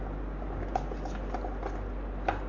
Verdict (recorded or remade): recorded